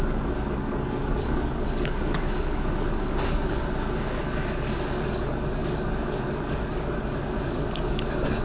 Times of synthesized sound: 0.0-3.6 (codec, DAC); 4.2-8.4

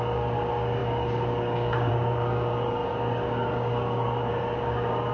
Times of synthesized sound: 0.0-5.1 (codec, DAC)

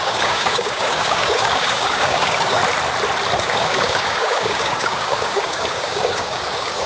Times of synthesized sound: 0.0-2.6 (codec, DAC); 3.4-6.9

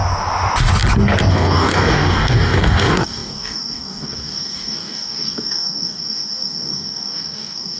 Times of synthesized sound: 1.3-7.8 (codec, DAC)

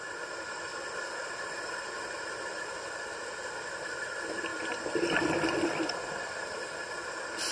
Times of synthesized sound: none